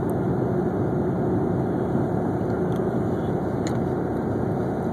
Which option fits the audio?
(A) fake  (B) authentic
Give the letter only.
B